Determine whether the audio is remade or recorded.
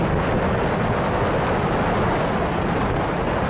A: recorded